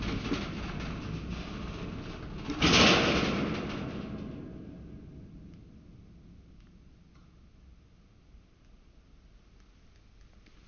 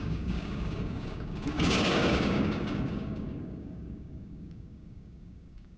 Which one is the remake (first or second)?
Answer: second